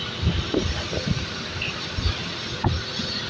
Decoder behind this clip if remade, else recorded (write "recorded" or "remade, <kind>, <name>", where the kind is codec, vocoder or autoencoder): recorded